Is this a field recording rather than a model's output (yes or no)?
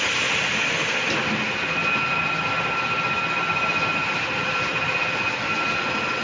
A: yes